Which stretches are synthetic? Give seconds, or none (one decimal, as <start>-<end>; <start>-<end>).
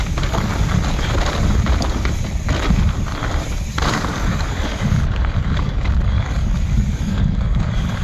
0.0-0.5; 3.9-8.0